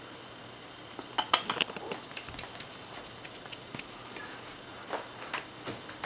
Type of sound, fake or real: real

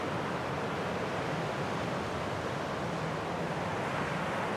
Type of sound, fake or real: real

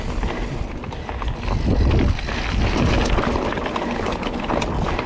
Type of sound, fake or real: real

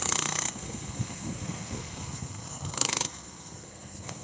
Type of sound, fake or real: fake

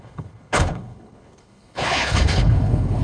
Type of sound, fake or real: fake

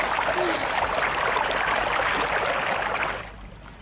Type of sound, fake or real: real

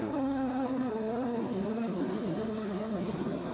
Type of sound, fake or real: fake